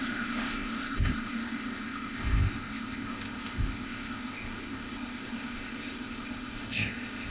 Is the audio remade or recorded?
remade